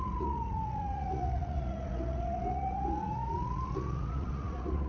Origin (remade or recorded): remade